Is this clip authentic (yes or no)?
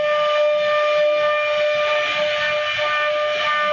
yes